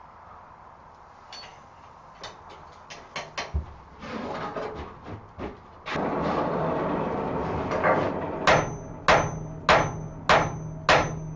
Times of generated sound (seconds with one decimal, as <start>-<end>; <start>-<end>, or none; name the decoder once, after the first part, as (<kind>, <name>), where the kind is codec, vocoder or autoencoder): none